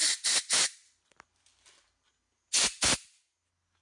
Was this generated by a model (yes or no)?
no